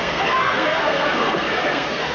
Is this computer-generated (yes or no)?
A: yes